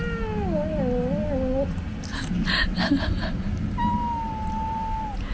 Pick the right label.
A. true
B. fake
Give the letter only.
A